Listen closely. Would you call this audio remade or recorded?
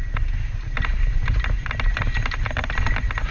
recorded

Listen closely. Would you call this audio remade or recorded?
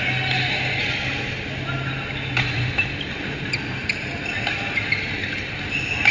recorded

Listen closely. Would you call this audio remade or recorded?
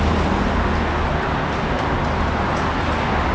recorded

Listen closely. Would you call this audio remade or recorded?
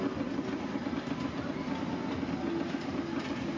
recorded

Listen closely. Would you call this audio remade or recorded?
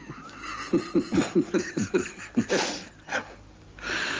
recorded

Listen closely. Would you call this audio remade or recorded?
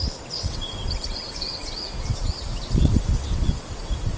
remade